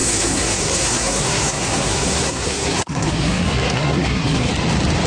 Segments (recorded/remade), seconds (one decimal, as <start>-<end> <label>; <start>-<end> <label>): 0.0-4.5 remade; 4.5-5.1 recorded